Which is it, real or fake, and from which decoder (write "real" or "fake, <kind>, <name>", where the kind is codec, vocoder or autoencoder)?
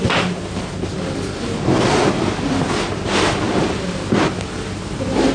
real